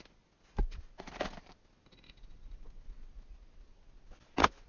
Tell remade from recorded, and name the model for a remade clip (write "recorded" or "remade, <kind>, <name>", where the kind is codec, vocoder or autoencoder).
recorded